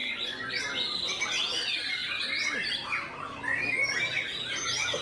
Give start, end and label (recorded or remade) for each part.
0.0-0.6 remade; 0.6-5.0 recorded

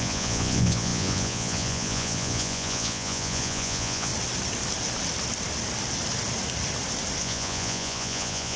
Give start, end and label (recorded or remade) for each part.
0.0-4.1 remade; 4.1-7.2 recorded; 7.2-8.6 remade

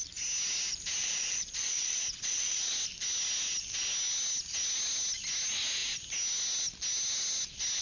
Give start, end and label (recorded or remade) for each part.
0.0-1.0 recorded; 1.0-2.7 remade; 2.7-7.8 recorded

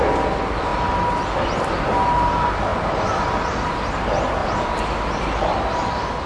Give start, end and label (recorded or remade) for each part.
0.0-6.3 recorded